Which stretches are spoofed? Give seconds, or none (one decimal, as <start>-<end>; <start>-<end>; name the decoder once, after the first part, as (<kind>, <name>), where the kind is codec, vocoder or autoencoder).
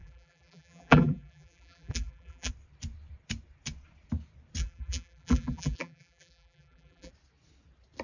0.0-2.5 (vocoder, BigVGAN v2); 4.6-7.1